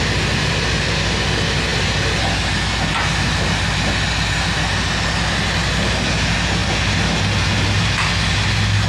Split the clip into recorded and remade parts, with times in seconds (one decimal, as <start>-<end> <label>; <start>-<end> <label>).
0.0-8.9 recorded